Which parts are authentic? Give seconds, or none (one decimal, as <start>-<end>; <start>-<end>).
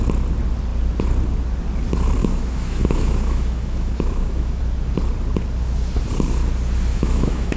0.0-2.2; 4.6-6.9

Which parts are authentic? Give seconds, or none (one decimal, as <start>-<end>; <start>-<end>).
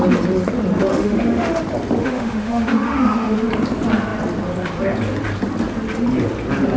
0.0-0.9; 1.6-2.0; 3.5-6.8